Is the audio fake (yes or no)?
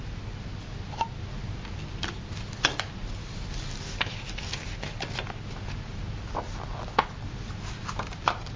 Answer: no